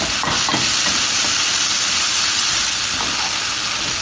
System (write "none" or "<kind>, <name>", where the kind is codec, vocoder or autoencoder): none